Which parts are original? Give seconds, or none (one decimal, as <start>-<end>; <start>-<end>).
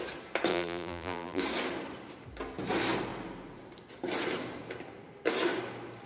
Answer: 0.0-0.5; 1.4-6.1